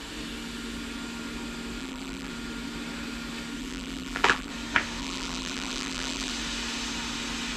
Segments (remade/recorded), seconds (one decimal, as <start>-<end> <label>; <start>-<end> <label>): 0.0-1.8 recorded; 1.8-2.3 remade; 2.3-3.6 recorded; 3.6-4.5 remade; 4.5-5.0 recorded; 5.0-6.3 remade; 6.3-7.6 recorded